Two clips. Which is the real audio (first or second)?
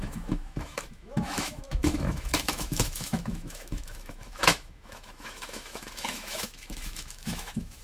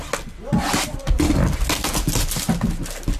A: second